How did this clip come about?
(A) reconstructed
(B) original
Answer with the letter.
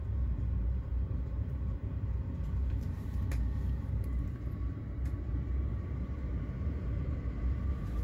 A